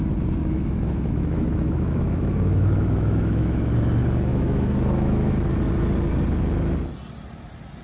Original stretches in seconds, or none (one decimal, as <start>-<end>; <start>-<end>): 0.0-0.4; 3.7-4.3; 5.3-7.8